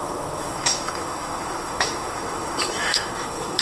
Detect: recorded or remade remade